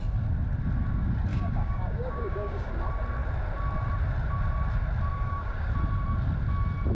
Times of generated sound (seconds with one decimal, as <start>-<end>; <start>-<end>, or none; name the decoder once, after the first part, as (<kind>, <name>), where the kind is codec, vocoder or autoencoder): 1.3-2.7 (codec, DAC); 5.1-5.7